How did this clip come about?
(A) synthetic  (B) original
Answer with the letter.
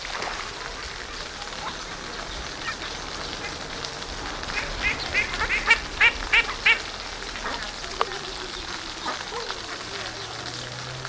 B